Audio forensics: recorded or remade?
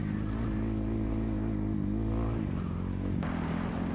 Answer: recorded